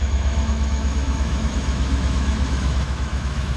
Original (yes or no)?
no